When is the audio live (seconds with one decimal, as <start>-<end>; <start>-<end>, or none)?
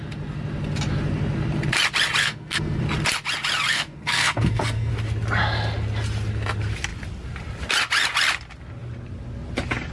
0.0-2.2; 2.8-3.7; 4.9-9.9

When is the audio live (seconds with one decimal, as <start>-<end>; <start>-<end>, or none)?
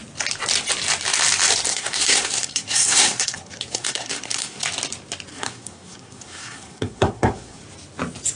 0.0-1.7; 4.6-5.3; 7.6-8.4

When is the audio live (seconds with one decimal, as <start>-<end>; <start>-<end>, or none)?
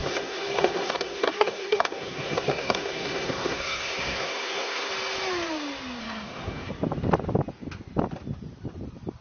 4.9-6.0; 6.7-9.2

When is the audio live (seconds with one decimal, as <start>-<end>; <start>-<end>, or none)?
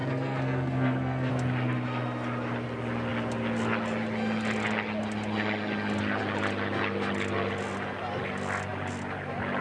1.3-9.6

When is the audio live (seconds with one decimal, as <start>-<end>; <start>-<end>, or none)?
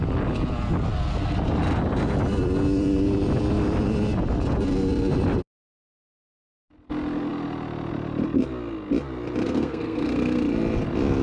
0.0-9.4; 10.4-11.2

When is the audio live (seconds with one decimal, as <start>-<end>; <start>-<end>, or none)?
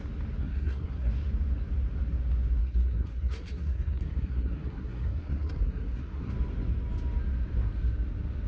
0.0-0.4; 1.1-2.6; 6.3-8.5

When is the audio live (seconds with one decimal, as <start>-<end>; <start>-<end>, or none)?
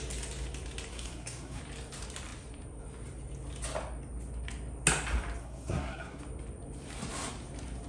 0.0-0.9; 1.6-5.4; 6.2-7.9